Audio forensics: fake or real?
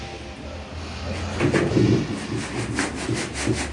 real